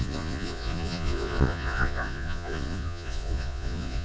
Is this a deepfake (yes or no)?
yes